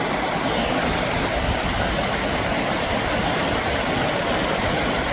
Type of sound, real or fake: real